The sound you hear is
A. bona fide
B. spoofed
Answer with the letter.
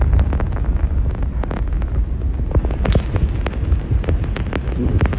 A